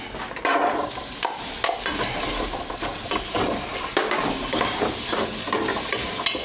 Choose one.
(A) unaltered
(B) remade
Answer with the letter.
A